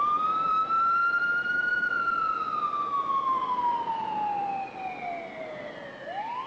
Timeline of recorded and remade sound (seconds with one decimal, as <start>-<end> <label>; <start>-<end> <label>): 0.0-6.5 recorded